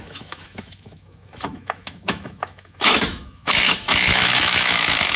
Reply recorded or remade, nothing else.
remade